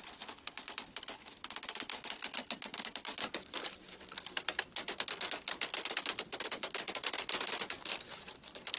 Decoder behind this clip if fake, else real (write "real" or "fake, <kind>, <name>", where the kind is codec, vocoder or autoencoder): real